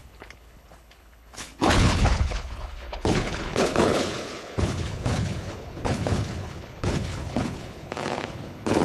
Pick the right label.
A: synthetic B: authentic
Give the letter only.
A